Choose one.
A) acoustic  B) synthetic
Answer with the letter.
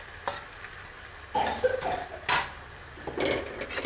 A